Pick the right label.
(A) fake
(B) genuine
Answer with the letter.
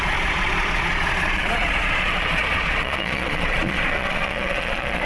A